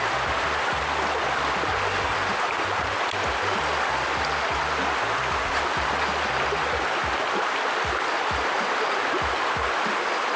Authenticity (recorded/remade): recorded